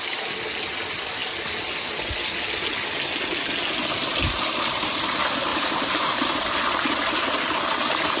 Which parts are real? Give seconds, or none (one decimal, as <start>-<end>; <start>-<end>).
0.0-5.5; 7.4-8.2